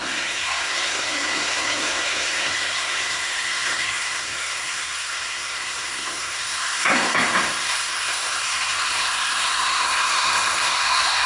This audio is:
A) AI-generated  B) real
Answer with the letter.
A